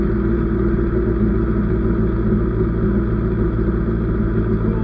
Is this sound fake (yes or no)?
no